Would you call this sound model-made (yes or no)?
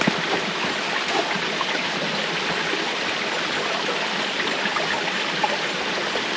no